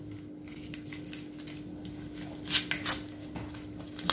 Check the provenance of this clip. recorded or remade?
recorded